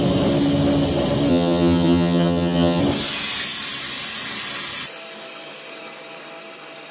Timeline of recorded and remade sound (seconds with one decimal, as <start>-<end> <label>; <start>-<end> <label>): 0.0-1.3 recorded; 1.3-2.8 remade; 2.8-6.9 recorded